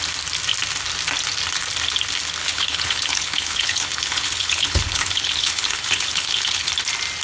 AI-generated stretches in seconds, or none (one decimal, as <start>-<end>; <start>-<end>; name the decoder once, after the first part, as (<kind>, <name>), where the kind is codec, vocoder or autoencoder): 2.4-6.7 (codec, HILCodec)